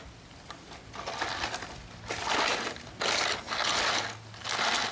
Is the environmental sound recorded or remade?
recorded